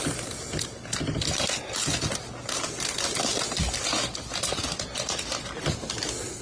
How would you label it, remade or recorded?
recorded